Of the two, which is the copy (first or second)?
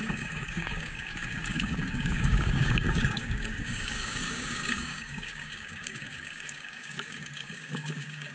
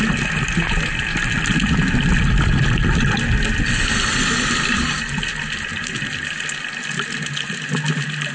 first